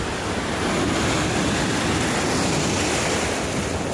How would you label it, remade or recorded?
recorded